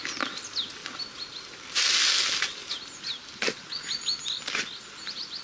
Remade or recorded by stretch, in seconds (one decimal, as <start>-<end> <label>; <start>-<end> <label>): 0.0-5.4 recorded

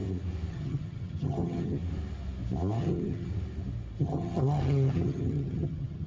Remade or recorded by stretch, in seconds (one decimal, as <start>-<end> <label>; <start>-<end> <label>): 0.0-0.5 recorded; 0.5-1.8 remade; 1.8-2.8 recorded; 2.8-3.3 remade; 3.3-4.0 recorded; 4.0-6.1 remade

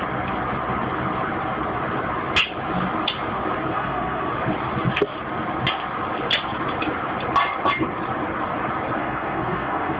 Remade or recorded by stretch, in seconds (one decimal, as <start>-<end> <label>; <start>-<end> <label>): 0.0-3.7 recorded; 3.7-4.3 remade; 4.3-9.0 recorded; 9.0-10.0 remade